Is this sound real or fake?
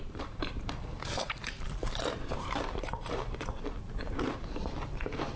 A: fake